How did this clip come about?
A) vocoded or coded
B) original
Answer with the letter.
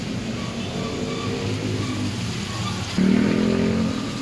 B